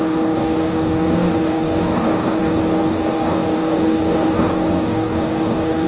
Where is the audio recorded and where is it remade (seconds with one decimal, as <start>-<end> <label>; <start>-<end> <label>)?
0.0-5.9 remade